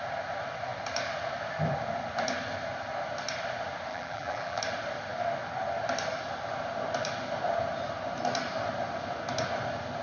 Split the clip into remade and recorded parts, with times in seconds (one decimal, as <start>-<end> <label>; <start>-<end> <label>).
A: 0.0-3.9 recorded; 3.9-4.6 remade; 4.6-10.0 recorded